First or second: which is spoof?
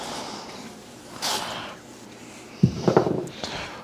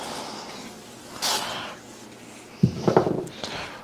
first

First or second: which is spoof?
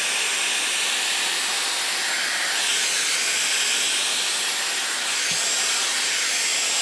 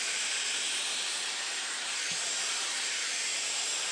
second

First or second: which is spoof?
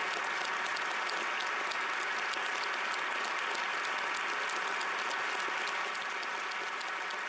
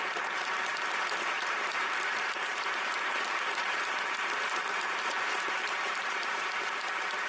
second